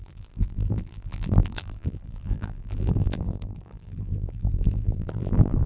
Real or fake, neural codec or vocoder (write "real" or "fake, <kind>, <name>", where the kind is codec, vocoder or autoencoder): fake, vocoder, BigVGAN v2